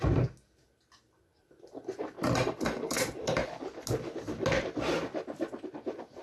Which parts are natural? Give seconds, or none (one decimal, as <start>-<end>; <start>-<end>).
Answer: 0.0-6.2